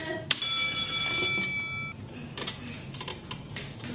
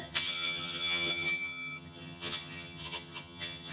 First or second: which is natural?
first